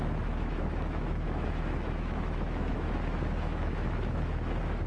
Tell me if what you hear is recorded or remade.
remade